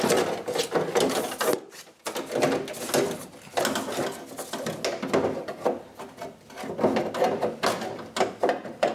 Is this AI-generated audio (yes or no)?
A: no